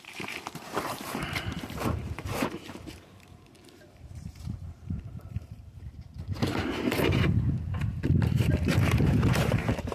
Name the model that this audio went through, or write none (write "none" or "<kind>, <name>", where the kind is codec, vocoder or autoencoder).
vocoder, BigVGAN v2